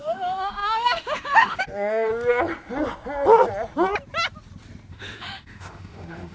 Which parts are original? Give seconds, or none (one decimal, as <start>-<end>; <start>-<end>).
2.1-4.9